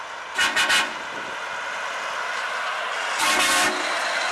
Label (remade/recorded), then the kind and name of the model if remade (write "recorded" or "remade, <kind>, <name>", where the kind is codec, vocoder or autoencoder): recorded